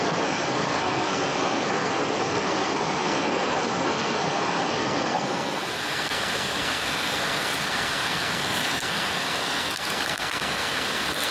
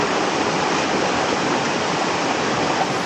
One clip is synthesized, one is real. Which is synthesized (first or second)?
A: first